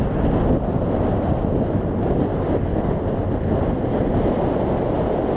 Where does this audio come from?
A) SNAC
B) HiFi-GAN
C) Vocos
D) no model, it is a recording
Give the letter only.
D